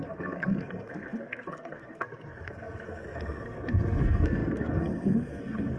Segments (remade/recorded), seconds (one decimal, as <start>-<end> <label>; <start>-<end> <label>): 0.0-5.8 remade